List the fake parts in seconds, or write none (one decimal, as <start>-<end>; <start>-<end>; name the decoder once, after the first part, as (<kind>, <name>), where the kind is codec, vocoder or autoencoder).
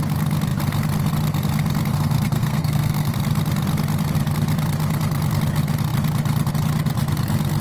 1.9-3.1 (codec, SNAC)